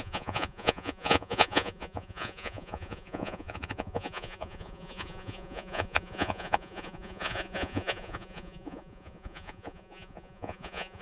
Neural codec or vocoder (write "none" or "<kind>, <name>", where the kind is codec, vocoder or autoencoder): vocoder, Vocos